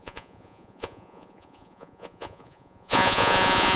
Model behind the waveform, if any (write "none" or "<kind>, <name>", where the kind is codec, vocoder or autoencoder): vocoder, Vocos